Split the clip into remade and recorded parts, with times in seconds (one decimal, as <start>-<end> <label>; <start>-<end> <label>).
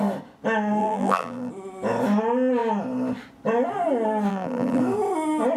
0.0-0.8 recorded; 0.8-1.5 remade; 1.5-4.3 recorded; 4.3-4.8 remade; 4.8-5.6 recorded